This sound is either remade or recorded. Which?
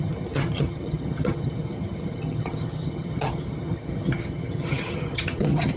remade